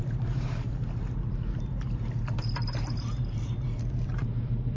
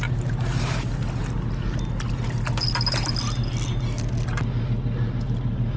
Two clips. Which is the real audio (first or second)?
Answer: second